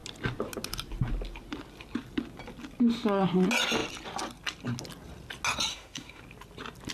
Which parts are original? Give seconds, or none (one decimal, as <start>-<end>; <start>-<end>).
0.0-5.7; 6.2-6.9